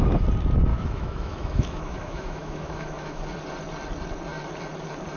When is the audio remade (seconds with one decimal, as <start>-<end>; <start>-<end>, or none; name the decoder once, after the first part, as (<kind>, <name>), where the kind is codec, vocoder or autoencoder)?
0.7-3.2 (autoencoder, DAC-VAE)